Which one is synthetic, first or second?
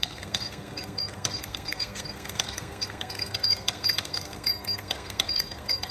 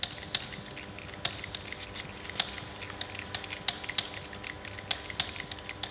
first